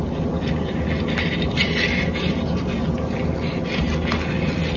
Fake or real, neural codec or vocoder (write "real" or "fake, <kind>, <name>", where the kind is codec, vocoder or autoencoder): real